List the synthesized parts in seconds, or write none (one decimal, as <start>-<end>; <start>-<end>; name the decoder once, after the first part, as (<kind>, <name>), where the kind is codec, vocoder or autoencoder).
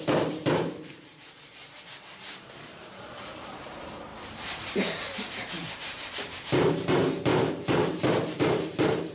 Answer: 0.0-9.1 (vocoder, BigVGAN v2)